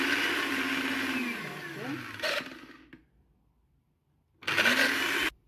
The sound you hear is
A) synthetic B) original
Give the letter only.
B